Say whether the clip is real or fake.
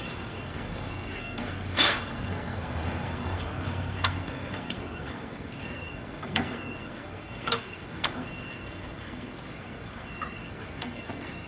fake